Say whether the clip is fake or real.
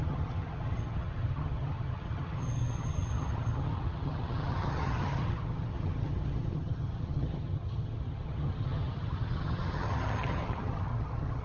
fake